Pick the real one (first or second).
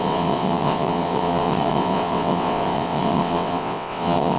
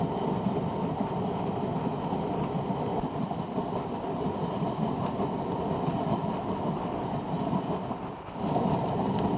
second